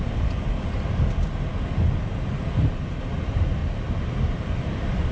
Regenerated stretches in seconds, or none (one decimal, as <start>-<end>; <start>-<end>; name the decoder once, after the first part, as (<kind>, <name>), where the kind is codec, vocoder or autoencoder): none

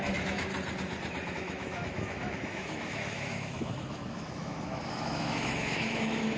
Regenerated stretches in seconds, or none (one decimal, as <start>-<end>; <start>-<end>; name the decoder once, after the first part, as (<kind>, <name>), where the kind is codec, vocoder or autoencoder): 0.0-0.5 (autoencoder, DAC-VAE); 1.3-6.4

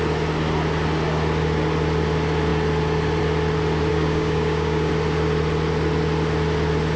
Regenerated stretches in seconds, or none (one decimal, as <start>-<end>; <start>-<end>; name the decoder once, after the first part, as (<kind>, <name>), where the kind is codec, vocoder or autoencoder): 3.9-4.9 (codec, DAC)

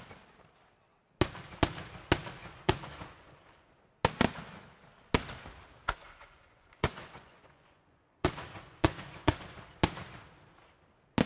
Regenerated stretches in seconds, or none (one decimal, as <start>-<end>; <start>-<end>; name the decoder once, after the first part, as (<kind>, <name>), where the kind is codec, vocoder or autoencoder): 2.4-3.7 (vocoder, Vocos); 6.0-9.4

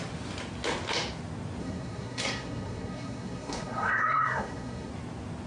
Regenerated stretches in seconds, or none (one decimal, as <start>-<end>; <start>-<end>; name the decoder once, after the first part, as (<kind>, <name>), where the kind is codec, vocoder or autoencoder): 1.6-4.9 (codec, SNAC)

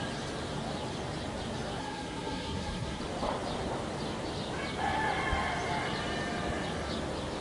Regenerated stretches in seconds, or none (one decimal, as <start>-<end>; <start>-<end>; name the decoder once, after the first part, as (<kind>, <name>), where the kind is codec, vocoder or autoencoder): 1.8-3.0 (codec, SNAC)